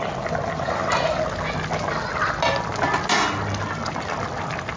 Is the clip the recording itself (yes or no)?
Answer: yes